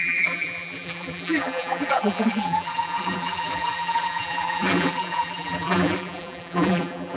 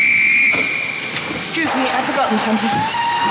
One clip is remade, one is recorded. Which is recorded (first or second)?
second